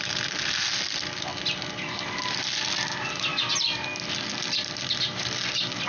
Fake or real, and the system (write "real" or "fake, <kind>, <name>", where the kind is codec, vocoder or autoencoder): real